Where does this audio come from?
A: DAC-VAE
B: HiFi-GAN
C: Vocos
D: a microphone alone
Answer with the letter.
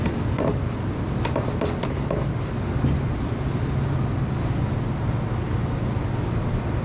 D